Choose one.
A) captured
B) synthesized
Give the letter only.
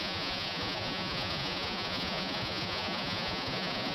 B